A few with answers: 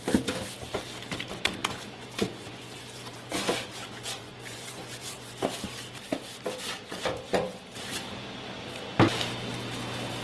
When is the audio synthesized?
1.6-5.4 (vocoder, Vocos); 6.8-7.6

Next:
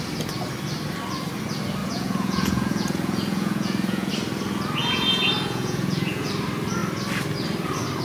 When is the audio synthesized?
1.8-4.1 (vocoder, Vocos); 4.8-6.3

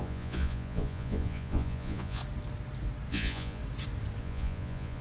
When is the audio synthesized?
0.0-2.2 (vocoder, Vocos); 3.1-3.6; 4.2-5.0